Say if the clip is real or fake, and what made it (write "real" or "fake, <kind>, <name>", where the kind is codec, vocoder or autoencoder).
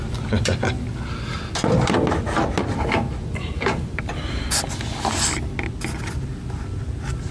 real